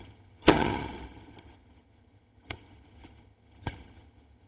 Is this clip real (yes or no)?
no